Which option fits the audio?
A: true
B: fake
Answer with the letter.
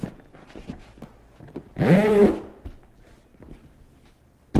A